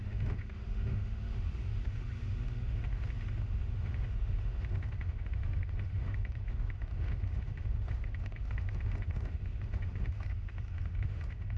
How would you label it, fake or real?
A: fake